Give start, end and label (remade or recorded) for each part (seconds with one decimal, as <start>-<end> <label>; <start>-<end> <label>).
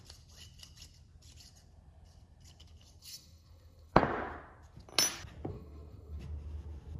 0.0-3.0 recorded; 3.0-4.0 remade; 4.0-5.5 recorded; 5.5-6.2 remade; 6.2-7.0 recorded